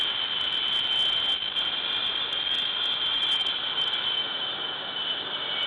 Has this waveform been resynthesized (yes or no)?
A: no